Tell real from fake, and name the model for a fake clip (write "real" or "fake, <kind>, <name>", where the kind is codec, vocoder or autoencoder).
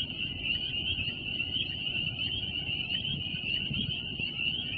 fake, vocoder, Vocos